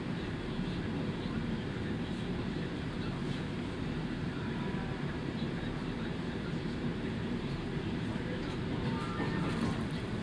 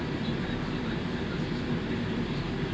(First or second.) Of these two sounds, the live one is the second